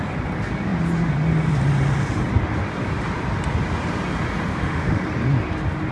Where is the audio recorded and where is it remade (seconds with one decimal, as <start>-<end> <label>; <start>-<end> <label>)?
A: 0.0-4.5 recorded; 4.5-5.0 remade; 5.0-5.9 recorded